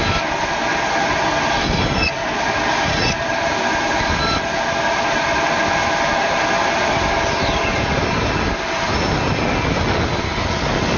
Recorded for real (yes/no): yes